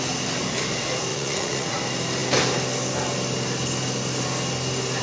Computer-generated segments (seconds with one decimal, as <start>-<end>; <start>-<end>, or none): 1.1-1.8